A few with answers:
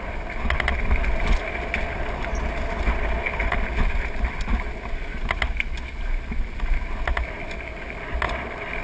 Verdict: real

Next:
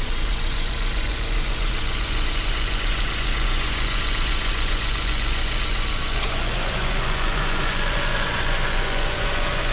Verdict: fake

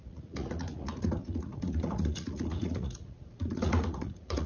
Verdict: fake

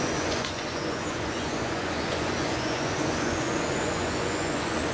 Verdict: fake